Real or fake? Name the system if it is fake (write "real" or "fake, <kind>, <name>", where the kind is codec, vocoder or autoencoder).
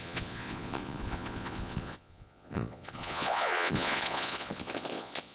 fake, vocoder, Vocos